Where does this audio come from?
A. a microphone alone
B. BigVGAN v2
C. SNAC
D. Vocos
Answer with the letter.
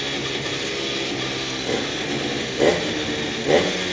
A